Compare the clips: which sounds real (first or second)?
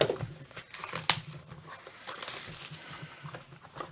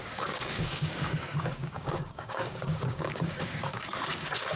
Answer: first